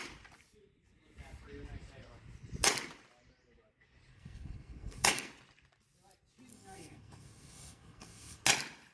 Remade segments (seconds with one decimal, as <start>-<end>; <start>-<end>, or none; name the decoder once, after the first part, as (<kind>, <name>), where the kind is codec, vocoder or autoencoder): 4.1-5.3 (codec, SNAC); 6.5-8.4